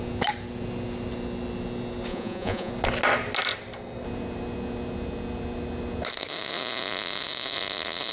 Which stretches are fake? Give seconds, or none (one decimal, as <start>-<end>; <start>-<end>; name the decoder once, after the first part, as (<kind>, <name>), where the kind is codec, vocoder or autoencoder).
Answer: 2.1-2.7 (vocoder, Vocos)